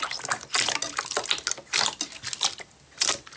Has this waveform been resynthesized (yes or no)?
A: no